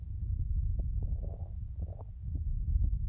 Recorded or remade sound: recorded